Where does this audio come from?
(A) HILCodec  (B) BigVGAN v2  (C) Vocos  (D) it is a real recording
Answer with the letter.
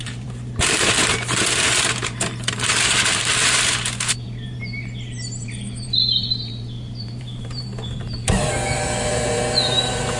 B